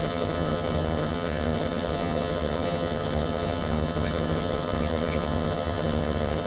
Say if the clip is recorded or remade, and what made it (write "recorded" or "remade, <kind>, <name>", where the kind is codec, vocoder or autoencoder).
remade, vocoder, HiFi-GAN